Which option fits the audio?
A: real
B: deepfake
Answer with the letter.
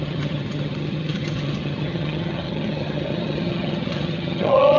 B